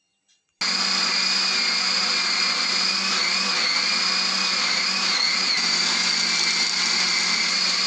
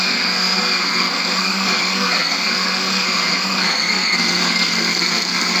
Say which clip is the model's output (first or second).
second